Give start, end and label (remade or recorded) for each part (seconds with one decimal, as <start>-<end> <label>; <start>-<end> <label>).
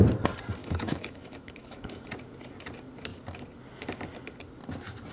0.0-0.6 recorded; 0.6-2.1 remade; 2.1-5.1 recorded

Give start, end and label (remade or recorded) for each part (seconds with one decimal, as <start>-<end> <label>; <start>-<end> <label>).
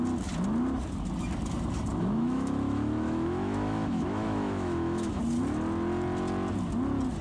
0.0-1.9 recorded; 1.9-5.2 remade; 5.2-7.2 recorded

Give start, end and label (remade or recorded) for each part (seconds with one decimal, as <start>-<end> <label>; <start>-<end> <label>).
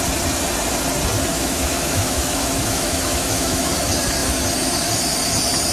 0.0-1.3 recorded; 1.3-3.7 remade; 3.7-5.7 recorded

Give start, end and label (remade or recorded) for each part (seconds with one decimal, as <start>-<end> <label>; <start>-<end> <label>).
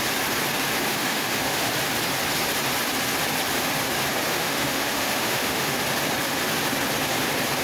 0.0-0.9 recorded; 0.9-1.7 remade; 1.7-4.3 recorded; 4.3-5.8 remade; 5.8-7.6 recorded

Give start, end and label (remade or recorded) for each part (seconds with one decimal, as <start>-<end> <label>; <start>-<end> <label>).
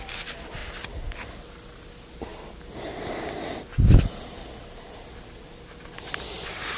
0.0-6.8 recorded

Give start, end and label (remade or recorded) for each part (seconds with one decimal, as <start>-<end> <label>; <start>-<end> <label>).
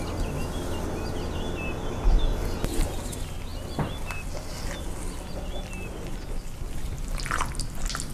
0.0-8.1 recorded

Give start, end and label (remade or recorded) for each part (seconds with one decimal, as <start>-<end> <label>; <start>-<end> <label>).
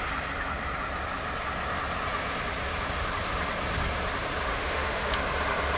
0.0-4.5 recorded; 4.5-5.1 remade; 5.1-5.8 recorded